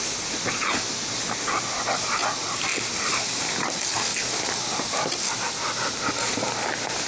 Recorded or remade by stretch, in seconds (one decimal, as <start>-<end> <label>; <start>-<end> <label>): 0.0-7.1 recorded

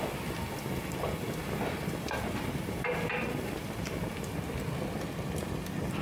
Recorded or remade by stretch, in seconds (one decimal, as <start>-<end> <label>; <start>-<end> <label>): 0.0-1.4 recorded; 1.4-4.1 remade; 4.1-6.0 recorded

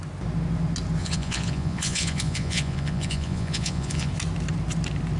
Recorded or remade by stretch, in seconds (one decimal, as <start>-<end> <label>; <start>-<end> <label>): 0.0-1.0 recorded; 1.0-4.1 remade; 4.1-5.2 recorded

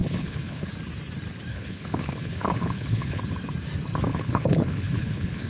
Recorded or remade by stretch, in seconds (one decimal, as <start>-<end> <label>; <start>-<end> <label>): 0.0-0.7 remade; 0.7-1.5 recorded; 1.5-3.2 remade; 3.2-4.1 recorded; 4.1-5.5 remade

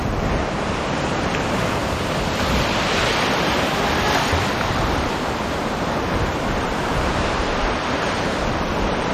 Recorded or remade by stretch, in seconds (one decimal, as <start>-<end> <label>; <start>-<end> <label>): 0.0-1.8 remade; 1.8-6.6 recorded; 6.6-9.1 remade

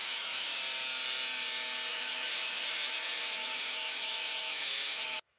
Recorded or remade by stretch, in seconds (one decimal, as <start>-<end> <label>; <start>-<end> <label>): 0.0-0.6 remade; 0.6-1.9 recorded; 1.9-5.4 remade

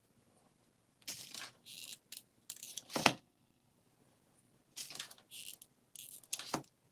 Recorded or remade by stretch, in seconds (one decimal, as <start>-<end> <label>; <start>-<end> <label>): 0.0-3.0 recorded; 3.0-3.7 remade; 3.7-6.9 recorded